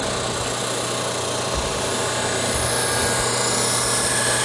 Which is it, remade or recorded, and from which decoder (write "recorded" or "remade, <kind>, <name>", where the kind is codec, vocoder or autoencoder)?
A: recorded